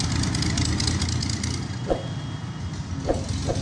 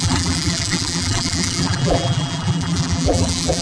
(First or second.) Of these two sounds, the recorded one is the first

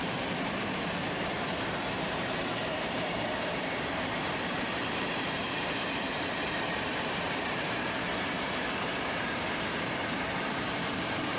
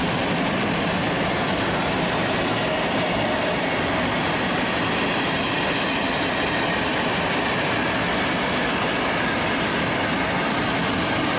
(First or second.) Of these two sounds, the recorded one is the second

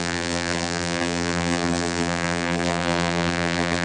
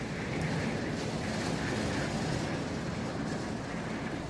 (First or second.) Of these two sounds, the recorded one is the second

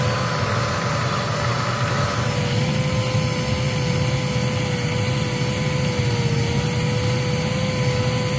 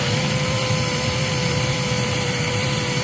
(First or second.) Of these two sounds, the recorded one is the first